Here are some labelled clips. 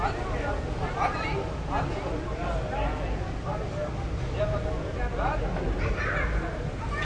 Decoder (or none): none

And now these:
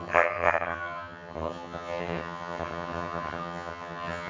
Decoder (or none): vocoder, HiFi-GAN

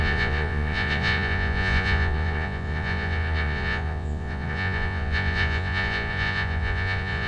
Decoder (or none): vocoder, Vocos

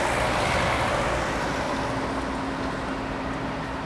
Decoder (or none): none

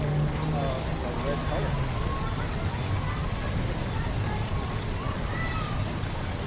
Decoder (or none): none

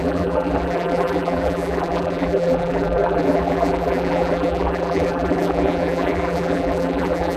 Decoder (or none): vocoder, BigVGAN v2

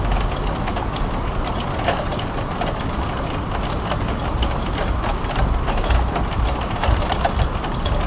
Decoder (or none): none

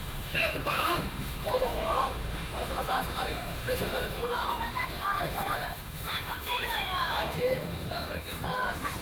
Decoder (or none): autoencoder, DAC-VAE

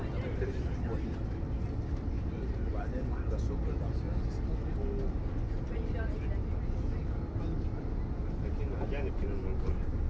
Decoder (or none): none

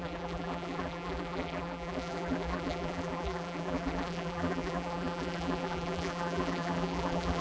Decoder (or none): vocoder, BigVGAN v2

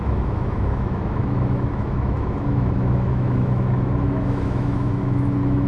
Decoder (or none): autoencoder, DAC-VAE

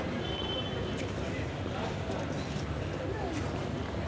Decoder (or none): vocoder, BigVGAN v2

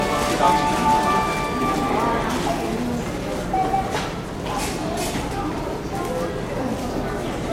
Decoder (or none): none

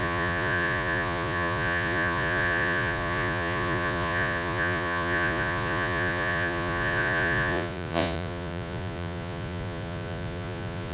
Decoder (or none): vocoder, Vocos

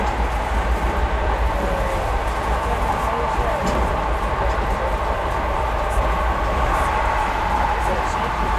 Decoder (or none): none